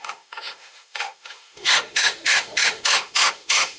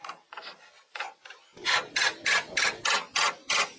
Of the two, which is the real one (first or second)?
second